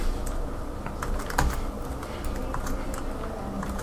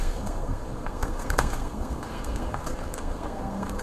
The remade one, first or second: second